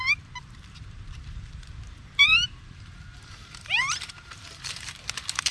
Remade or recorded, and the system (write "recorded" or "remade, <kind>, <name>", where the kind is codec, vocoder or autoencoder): remade, vocoder, BigVGAN v2